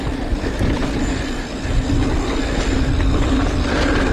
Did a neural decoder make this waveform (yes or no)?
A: no